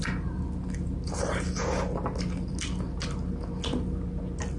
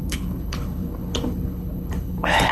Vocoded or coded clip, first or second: second